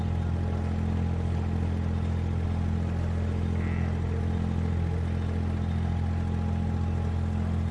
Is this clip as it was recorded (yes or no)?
yes